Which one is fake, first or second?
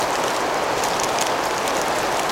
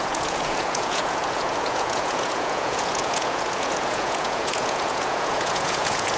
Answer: second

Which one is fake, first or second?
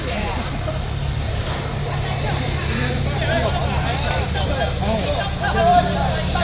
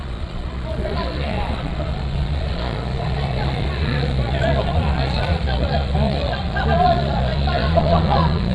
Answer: second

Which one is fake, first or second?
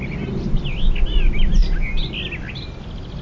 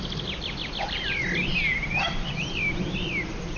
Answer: second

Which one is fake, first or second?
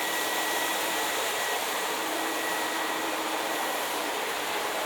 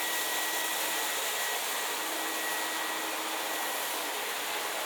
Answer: first